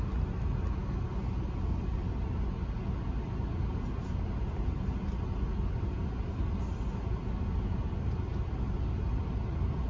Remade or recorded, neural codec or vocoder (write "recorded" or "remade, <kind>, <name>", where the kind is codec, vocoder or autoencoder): recorded